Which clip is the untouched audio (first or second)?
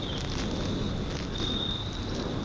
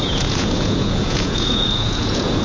first